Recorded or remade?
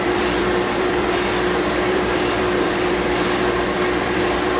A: remade